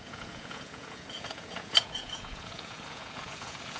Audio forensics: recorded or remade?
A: remade